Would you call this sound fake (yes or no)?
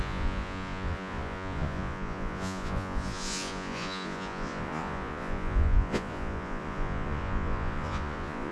yes